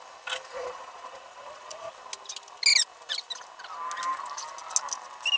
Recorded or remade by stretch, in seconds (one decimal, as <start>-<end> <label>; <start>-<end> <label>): 0.0-0.5 recorded; 0.5-1.9 remade; 1.9-5.4 recorded